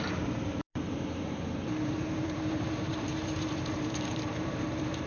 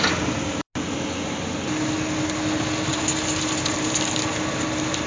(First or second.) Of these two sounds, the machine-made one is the first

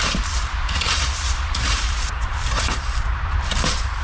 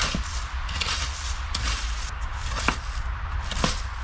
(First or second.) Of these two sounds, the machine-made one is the first